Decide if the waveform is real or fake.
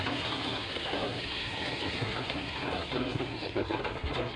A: fake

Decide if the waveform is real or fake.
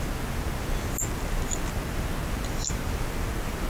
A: real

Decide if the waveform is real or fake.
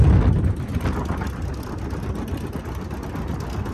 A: real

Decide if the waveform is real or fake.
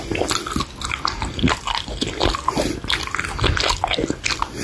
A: real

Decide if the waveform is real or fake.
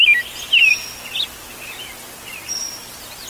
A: real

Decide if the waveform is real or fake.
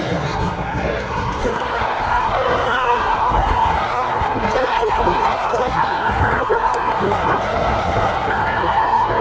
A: fake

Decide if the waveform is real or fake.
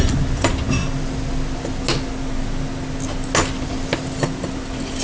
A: real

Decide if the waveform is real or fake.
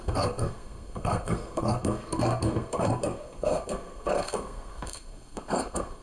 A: fake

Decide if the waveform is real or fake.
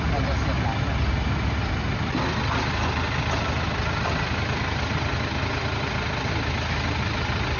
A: real